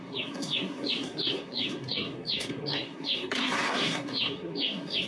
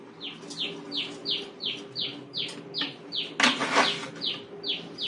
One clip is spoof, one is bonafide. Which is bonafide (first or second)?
second